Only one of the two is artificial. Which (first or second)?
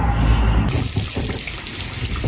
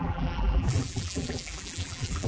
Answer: second